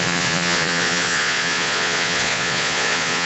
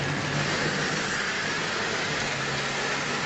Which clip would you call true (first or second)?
second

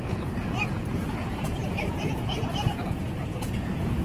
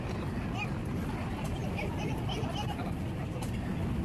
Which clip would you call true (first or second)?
second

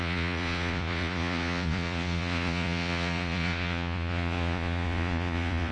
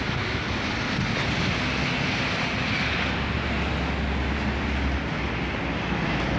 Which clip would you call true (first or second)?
second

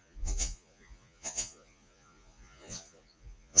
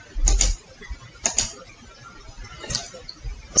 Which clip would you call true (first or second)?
second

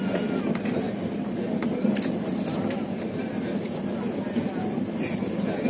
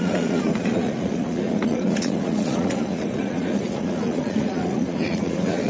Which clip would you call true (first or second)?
first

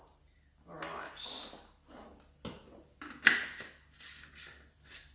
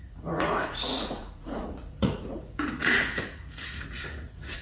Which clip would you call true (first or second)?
first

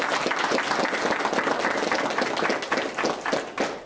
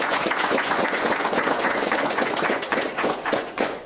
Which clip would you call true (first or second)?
first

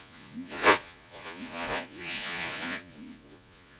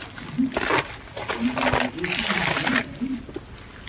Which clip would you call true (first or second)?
second